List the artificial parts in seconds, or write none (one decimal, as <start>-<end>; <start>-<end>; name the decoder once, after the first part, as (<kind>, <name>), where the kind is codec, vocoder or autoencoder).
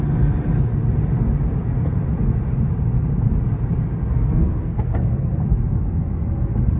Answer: 4.1-5.3 (codec, SNAC)